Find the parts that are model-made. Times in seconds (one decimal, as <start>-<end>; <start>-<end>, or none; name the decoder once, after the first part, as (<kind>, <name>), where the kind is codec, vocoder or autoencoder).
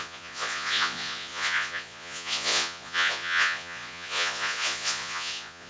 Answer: 0.0-5.7 (vocoder, Vocos)